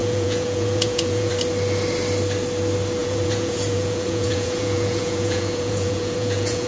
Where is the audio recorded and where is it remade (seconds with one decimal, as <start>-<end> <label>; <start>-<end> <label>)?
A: 0.0-1.3 remade; 1.3-3.0 recorded; 3.0-6.7 remade